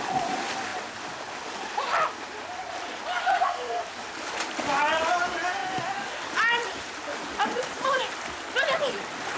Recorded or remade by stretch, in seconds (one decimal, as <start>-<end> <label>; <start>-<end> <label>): 0.0-3.2 recorded; 3.2-3.8 remade; 3.8-9.4 recorded